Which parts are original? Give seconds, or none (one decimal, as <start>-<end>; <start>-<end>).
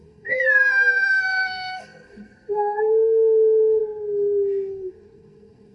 0.4-1.3; 3.8-4.7